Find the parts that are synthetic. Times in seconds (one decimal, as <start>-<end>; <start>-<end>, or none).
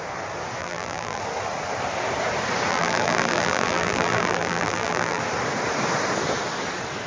0.6-1.2; 2.7-5.2